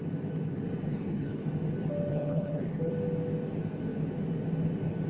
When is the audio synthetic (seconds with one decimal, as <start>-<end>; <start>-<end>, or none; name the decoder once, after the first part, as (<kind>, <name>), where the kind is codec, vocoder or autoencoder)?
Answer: 0.9-1.5 (codec, HILCodec); 2.1-2.9